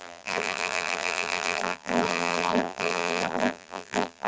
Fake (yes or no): yes